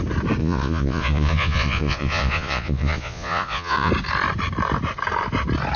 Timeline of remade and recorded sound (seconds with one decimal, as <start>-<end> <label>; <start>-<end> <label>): 0.0-0.4 recorded; 0.4-3.9 remade; 3.9-5.8 recorded